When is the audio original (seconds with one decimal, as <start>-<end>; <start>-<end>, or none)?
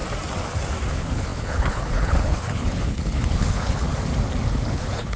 0.0-0.9; 3.9-4.5